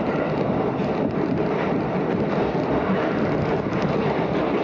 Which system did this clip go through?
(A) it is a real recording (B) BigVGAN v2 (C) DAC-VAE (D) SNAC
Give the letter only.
A